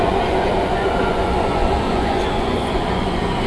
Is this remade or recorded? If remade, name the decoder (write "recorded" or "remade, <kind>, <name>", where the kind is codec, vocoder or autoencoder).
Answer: remade, vocoder, Vocos